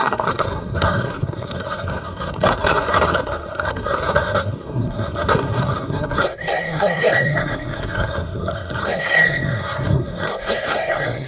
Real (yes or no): no